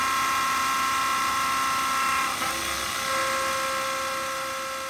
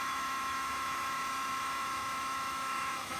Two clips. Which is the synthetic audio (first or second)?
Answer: second